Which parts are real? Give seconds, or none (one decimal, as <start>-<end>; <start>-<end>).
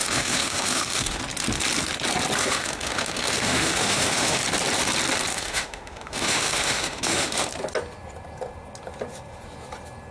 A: 1.2-2.4; 4.4-5.3; 7.5-10.1